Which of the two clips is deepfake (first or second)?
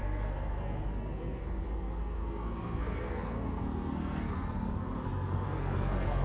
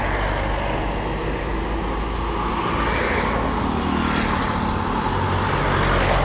first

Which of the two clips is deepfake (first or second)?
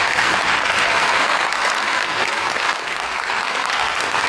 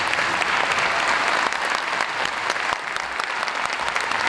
first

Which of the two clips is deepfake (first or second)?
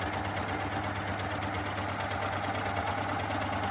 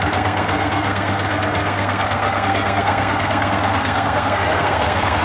second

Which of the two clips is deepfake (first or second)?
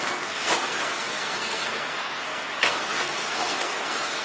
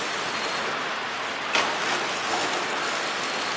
first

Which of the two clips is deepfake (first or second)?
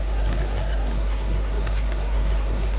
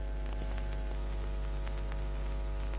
first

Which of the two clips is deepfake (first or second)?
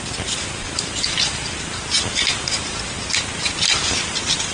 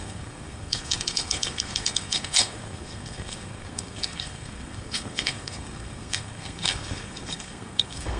second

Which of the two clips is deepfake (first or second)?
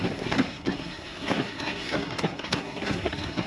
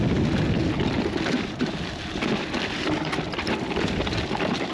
first